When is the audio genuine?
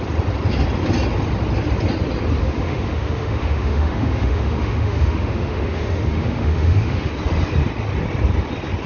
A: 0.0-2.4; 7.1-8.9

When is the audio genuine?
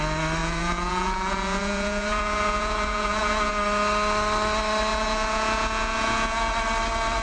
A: 0.0-0.4; 3.5-4.9; 6.5-7.2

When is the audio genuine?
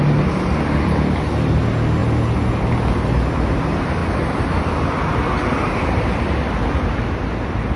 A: 0.0-7.8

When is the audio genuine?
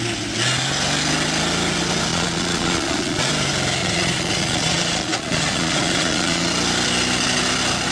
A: 0.0-2.1; 3.3-3.8; 6.5-7.9